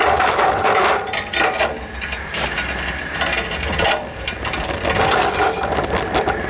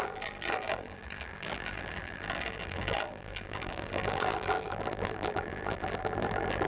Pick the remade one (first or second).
second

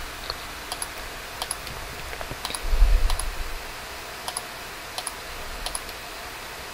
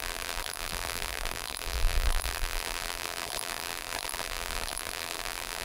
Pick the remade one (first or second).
second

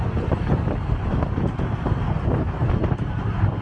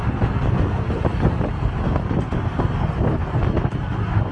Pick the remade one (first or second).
first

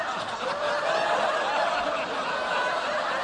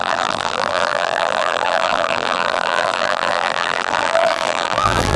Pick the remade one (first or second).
second